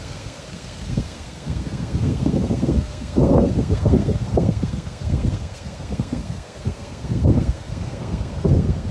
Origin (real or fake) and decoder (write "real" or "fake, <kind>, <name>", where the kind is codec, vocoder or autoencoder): fake, codec, SNAC